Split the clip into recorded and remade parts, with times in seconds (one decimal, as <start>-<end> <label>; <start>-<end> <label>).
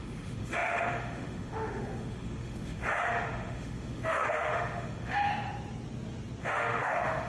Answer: 0.0-5.3 remade; 5.3-6.4 recorded; 6.4-7.3 remade